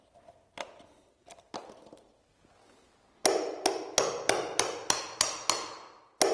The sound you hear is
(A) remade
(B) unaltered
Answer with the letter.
B